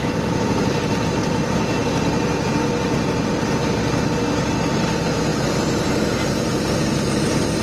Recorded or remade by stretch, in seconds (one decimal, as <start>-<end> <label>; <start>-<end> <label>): 0.0-7.6 recorded